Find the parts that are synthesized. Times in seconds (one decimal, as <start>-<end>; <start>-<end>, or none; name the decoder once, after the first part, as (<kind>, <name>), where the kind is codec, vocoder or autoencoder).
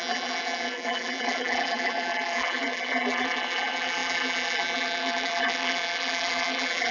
0.0-6.9 (vocoder, BigVGAN v2)